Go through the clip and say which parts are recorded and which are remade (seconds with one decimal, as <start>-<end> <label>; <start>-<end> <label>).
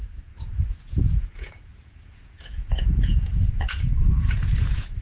0.0-5.0 remade